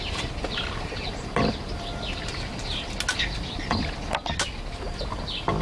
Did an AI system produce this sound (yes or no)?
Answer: no